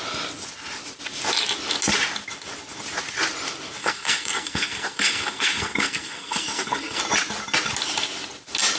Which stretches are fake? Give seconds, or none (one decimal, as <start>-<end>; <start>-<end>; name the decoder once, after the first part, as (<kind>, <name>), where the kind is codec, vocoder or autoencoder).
3.8-7.0 (codec, SNAC)